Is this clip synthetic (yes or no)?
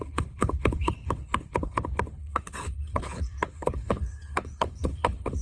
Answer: yes